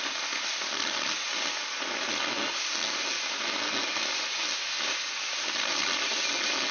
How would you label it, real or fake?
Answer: real